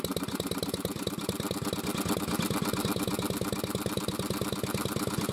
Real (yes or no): yes